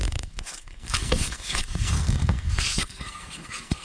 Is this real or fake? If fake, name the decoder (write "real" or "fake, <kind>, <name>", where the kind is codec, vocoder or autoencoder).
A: fake, codec, SNAC